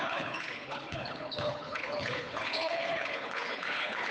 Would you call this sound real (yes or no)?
no